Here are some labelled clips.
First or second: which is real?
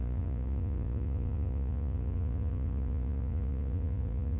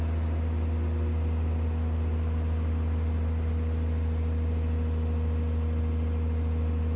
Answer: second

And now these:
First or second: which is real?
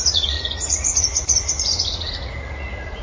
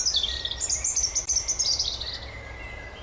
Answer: second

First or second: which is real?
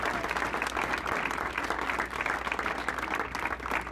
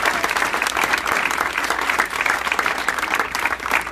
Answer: first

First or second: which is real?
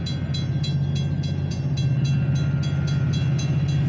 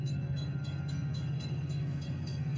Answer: first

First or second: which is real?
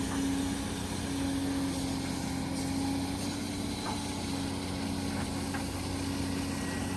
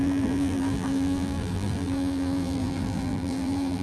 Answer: first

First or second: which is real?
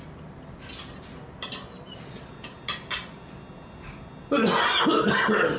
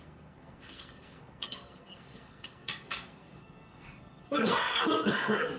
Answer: first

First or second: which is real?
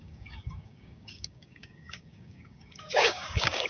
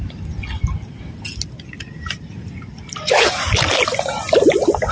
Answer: second